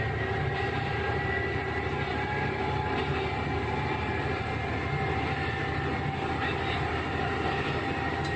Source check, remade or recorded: recorded